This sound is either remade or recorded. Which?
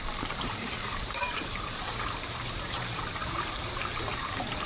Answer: remade